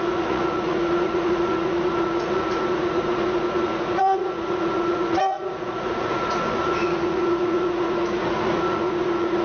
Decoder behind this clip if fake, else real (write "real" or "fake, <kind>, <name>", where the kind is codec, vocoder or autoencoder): fake, vocoder, Vocos